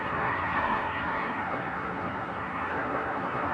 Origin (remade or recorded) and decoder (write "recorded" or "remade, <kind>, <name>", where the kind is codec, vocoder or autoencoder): remade, codec, SNAC